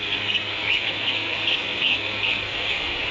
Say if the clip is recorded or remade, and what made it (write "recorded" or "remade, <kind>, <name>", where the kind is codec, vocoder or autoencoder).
remade, codec, SNAC